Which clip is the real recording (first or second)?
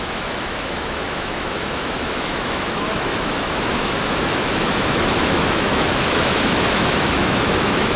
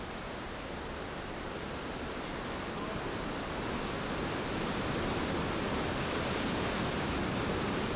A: second